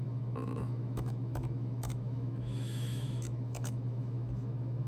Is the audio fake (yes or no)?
yes